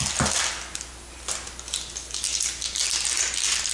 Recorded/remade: recorded